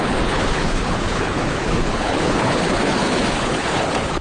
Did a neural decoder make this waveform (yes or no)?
yes